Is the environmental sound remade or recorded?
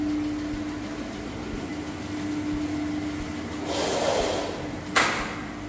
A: recorded